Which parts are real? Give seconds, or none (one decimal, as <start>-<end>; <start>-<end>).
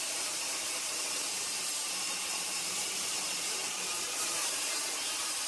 none